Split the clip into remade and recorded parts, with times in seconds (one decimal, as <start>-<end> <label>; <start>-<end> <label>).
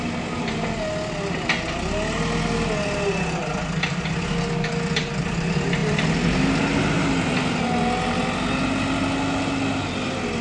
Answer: 0.0-10.4 recorded